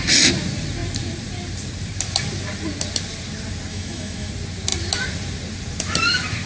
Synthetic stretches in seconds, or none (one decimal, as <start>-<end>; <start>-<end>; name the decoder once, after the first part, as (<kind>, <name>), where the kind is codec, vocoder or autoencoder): 3.7-4.3 (autoencoder, DAC-VAE)